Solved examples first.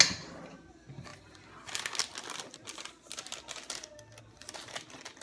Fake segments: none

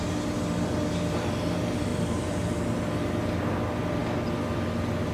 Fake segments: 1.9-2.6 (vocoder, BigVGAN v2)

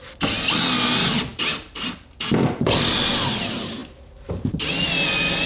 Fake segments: 3.8-4.3 (vocoder, BigVGAN v2)

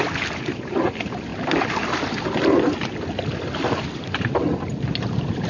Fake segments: 0.0-1.3 (vocoder, BigVGAN v2); 4.0-5.5

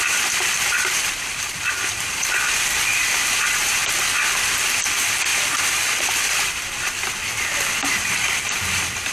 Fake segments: 0.0-3.8 (vocoder, BigVGAN v2); 4.4-9.1

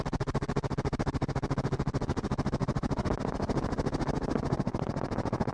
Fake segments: 2.6-3.1 (vocoder, BigVGAN v2)